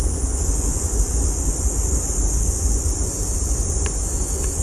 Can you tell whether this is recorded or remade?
remade